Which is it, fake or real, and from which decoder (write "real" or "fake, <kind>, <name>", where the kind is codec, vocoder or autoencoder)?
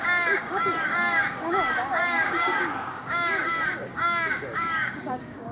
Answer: fake, codec, DAC